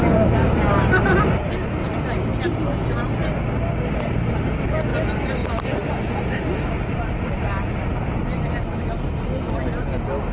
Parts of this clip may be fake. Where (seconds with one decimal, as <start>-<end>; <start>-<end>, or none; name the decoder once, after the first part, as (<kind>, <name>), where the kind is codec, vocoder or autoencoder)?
none